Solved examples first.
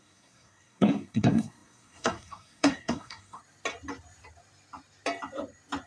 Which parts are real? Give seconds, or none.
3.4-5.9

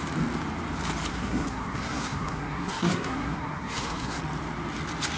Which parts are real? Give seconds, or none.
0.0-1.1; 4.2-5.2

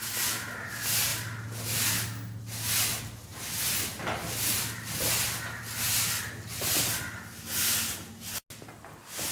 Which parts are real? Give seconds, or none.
0.0-9.3

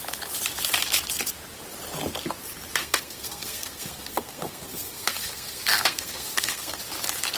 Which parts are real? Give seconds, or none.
0.0-2.8; 6.8-7.4